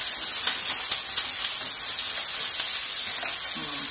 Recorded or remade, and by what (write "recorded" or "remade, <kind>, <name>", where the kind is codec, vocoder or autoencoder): recorded